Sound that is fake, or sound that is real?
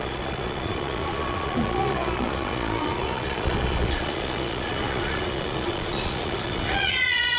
fake